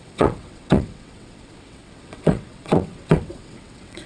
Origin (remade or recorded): remade